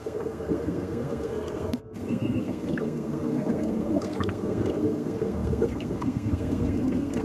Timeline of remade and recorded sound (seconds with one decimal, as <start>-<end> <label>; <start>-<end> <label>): 0.0-7.2 remade